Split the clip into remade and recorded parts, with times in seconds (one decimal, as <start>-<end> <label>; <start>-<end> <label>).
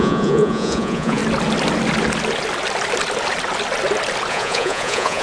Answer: 0.0-1.2 remade; 1.2-4.3 recorded; 4.3-5.2 remade